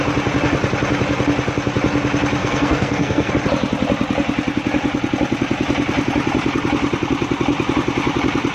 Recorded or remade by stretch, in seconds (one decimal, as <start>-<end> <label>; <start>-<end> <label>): 0.0-2.4 recorded; 2.4-3.3 remade; 3.3-8.5 recorded